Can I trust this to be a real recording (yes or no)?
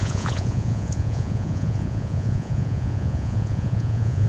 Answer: no